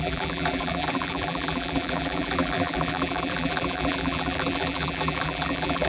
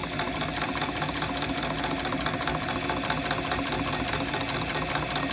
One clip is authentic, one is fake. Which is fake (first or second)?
first